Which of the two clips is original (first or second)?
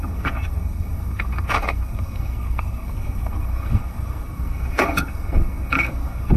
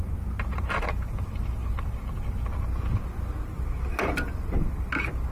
second